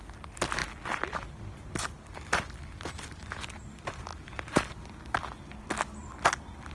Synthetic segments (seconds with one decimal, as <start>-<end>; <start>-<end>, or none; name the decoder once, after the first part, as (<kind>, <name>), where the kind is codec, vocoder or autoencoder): none